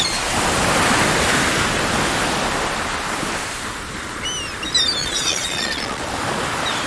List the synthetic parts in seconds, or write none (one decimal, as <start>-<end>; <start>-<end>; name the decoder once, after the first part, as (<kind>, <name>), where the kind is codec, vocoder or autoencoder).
5.0-6.0 (vocoder, Vocos)

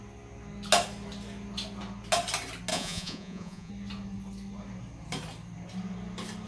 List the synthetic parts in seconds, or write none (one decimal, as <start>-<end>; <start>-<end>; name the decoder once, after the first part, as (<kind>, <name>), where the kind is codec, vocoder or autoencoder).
2.7-3.7 (vocoder, Vocos)

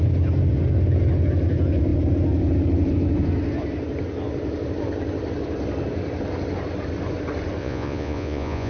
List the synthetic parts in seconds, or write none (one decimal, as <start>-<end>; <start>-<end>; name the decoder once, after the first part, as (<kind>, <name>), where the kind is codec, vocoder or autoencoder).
7.6-8.7 (vocoder, Vocos)

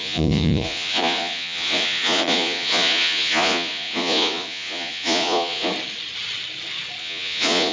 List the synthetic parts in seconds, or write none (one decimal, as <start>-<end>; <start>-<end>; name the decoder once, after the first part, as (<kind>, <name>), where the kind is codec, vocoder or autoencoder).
0.0-5.7 (vocoder, Vocos); 7.0-7.7

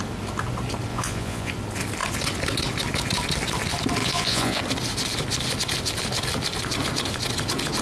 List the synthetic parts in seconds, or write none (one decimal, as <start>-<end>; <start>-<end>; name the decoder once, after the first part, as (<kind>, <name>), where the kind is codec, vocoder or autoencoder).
0.9-1.5 (vocoder, Vocos); 4.0-4.6

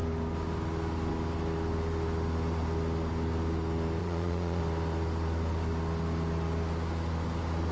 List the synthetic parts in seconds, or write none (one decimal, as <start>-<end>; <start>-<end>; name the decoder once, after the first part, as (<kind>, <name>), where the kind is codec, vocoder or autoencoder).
4.0-4.6 (vocoder, Vocos)

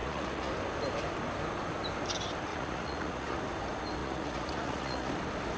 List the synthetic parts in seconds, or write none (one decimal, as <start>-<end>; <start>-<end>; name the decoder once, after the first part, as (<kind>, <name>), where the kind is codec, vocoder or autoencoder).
0.0-0.5 (vocoder, Vocos); 2.5-3.4; 4.0-5.1

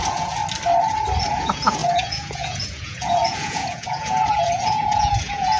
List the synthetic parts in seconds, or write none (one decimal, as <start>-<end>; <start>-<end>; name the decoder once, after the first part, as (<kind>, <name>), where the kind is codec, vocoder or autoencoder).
0.0-0.4 (vocoder, Vocos); 1.3-5.6